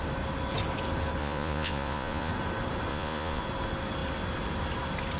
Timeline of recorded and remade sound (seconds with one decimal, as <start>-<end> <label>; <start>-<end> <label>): 0.0-1.2 recorded; 1.2-2.3 remade; 2.3-2.9 recorded; 2.9-3.4 remade; 3.4-5.2 recorded

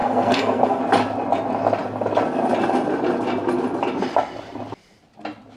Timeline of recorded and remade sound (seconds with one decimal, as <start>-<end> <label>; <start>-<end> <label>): 0.0-0.8 remade; 0.8-5.6 recorded

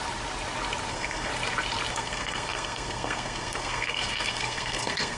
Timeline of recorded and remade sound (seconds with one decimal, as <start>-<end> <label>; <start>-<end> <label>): 0.0-0.9 recorded; 0.9-1.3 remade; 1.3-1.9 recorded; 1.9-5.2 remade